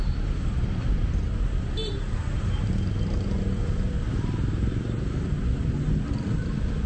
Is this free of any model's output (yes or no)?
yes